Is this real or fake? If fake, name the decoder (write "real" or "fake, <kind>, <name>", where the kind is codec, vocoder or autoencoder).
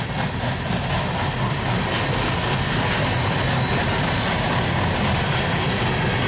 real